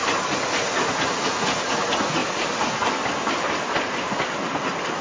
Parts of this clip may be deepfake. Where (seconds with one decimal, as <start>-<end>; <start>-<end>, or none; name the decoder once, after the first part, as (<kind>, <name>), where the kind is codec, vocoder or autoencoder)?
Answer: 2.2-3.1 (vocoder, BigVGAN v2)